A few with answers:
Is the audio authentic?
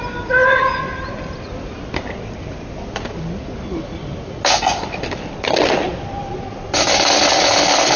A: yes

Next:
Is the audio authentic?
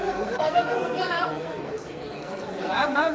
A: no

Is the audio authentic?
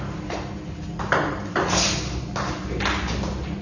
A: yes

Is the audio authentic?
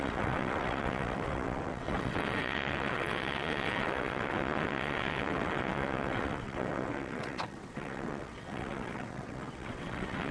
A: no